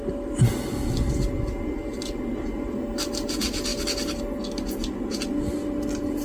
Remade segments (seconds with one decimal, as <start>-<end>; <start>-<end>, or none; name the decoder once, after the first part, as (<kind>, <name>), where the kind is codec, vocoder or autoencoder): none